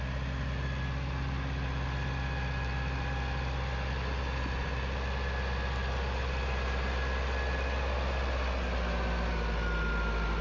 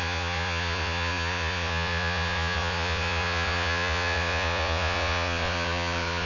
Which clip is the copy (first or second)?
second